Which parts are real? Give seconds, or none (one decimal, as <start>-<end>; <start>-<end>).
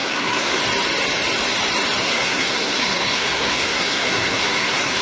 0.6-2.0